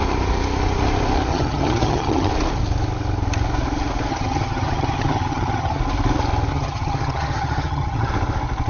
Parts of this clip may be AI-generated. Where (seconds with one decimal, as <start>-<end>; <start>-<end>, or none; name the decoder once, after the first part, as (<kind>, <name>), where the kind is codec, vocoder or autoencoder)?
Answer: 1.3-2.3 (vocoder, HiFi-GAN); 4.1-5.8; 6.5-8.1